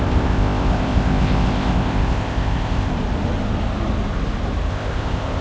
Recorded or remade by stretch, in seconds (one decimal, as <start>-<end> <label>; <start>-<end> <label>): 0.0-2.9 remade; 2.9-4.7 recorded; 4.7-5.4 remade